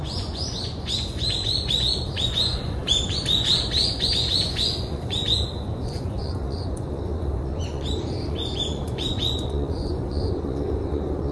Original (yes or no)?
no